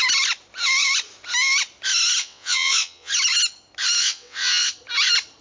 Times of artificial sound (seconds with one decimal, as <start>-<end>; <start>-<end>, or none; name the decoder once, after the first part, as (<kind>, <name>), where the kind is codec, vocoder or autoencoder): 2.2-3.1 (vocoder, WaveNeXt); 4.0-4.7